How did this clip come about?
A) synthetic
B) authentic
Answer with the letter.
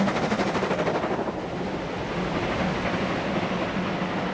B